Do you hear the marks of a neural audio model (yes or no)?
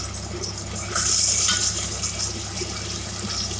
no